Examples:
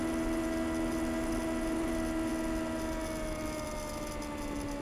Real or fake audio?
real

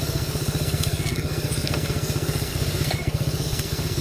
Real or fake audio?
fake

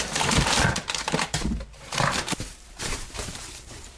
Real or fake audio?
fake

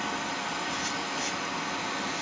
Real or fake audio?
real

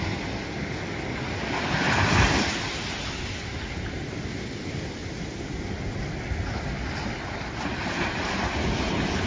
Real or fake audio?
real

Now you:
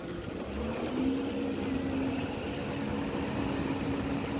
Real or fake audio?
real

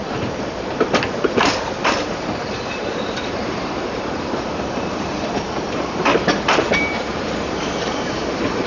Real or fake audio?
fake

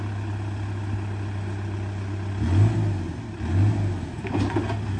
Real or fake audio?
real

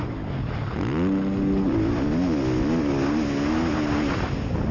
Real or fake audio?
real